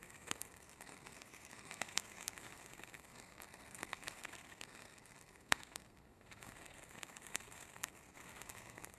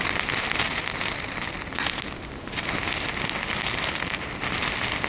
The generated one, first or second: first